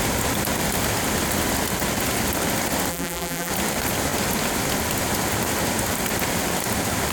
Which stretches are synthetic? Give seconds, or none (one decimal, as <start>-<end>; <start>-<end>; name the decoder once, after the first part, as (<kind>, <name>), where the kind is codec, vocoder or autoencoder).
2.9-3.5 (vocoder, BigVGAN v2)